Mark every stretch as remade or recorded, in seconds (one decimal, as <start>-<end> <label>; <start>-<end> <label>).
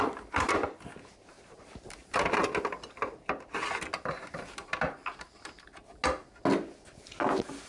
0.0-7.7 recorded